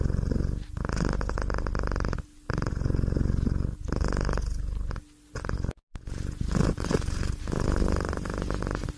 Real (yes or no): yes